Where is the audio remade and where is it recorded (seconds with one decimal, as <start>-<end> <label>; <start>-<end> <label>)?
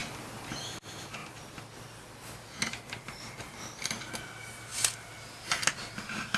0.0-6.4 recorded